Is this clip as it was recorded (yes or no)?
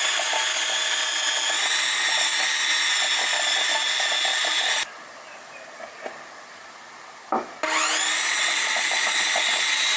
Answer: yes